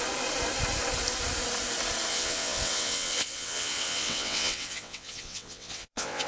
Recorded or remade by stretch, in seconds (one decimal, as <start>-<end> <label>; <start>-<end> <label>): 0.0-2.1 recorded; 2.1-6.3 remade